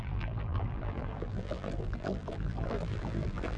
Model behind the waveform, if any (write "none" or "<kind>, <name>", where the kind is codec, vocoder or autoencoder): vocoder, BigVGAN v2